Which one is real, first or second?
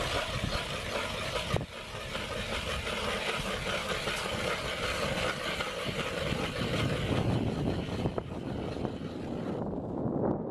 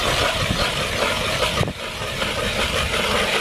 first